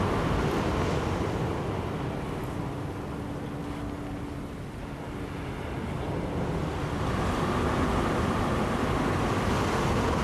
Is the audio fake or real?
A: real